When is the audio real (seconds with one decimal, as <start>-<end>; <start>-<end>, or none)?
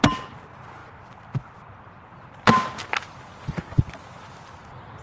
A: 0.0-5.0